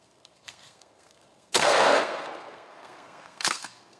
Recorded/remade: remade